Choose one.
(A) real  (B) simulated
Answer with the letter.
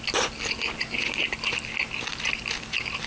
A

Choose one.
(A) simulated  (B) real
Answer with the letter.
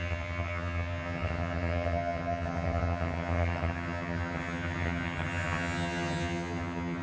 A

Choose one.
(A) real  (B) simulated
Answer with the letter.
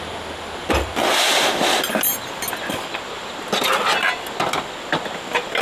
A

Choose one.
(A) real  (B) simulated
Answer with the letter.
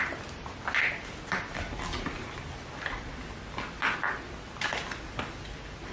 A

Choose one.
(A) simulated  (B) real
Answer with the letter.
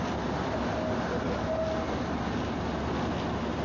B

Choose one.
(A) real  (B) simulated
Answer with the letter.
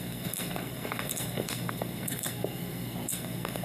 B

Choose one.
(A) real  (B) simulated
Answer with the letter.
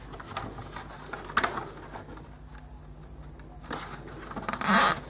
A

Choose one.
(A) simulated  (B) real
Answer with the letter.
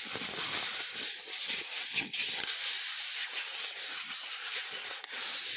B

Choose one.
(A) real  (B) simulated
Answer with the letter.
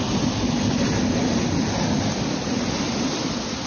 A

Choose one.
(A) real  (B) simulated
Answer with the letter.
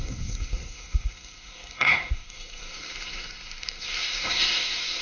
B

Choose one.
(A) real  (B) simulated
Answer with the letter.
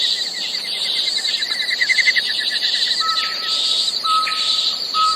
A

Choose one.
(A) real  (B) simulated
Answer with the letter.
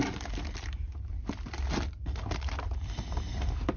B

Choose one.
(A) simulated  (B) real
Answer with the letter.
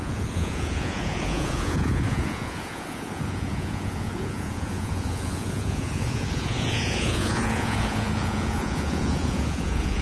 A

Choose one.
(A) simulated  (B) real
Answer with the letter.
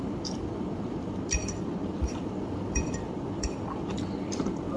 A